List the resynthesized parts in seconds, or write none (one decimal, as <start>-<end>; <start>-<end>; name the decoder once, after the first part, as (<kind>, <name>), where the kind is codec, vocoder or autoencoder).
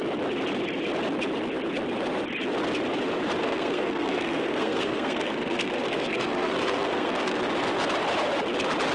3.4-7.4 (codec, SNAC)